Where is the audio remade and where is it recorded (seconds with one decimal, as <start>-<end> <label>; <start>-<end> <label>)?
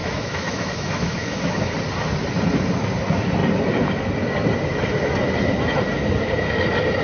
0.0-1.7 remade; 1.7-7.0 recorded